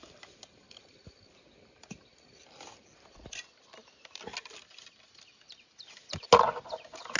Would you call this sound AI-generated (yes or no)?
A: no